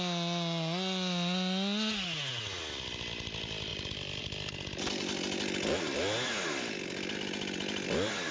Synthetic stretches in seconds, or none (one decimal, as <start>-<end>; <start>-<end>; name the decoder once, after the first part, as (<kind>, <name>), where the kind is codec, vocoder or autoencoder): none